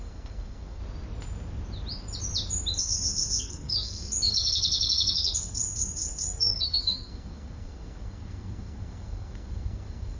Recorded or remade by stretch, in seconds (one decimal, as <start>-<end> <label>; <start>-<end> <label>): 0.0-0.8 remade; 0.8-2.8 recorded; 2.8-10.2 remade